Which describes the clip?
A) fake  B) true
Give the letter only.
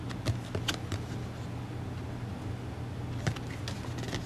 B